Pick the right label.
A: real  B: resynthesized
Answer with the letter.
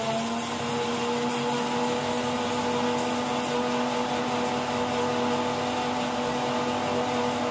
A